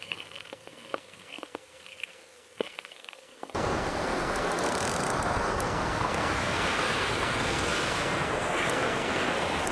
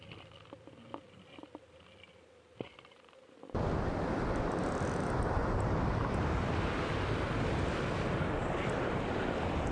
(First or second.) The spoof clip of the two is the first